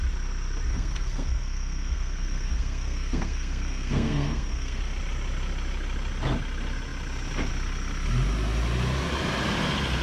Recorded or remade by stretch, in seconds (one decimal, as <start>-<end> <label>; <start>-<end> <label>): 0.0-0.7 recorded; 0.7-4.8 remade; 4.8-10.0 recorded